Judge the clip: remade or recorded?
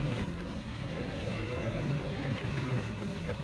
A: remade